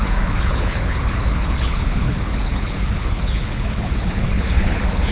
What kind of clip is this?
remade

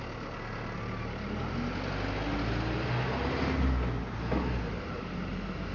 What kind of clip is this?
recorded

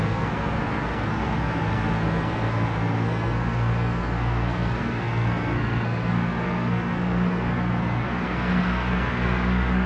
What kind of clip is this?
remade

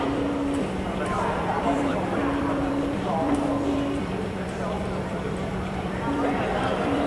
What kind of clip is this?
remade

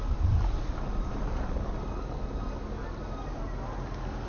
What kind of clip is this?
recorded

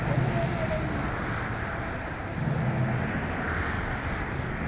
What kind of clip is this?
recorded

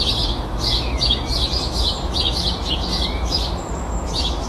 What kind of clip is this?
remade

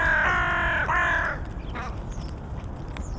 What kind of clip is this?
recorded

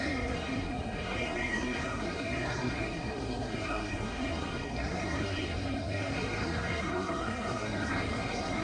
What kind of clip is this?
remade